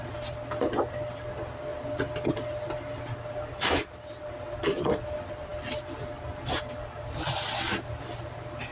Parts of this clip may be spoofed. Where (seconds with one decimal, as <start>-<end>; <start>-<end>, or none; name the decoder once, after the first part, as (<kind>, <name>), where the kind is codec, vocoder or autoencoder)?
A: none